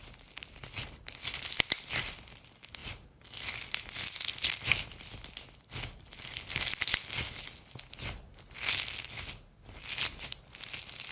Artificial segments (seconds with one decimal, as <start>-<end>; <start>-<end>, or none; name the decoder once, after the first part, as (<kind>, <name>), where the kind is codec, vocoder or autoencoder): none